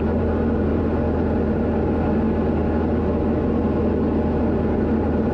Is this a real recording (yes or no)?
yes